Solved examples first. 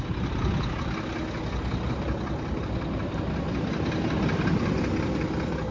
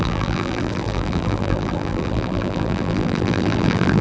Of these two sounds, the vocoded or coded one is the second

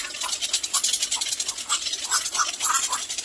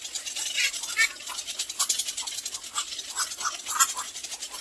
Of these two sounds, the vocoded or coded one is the first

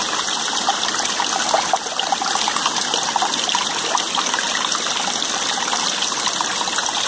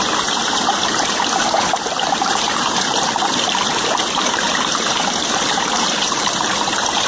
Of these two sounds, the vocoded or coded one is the second